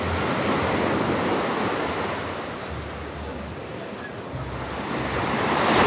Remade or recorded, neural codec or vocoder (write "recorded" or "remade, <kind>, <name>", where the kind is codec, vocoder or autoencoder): recorded